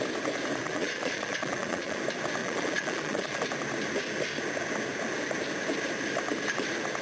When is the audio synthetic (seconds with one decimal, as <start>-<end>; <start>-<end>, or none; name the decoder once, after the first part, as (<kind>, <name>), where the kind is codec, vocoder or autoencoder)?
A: 0.6-2.0 (vocoder, Vocos); 2.4-3.4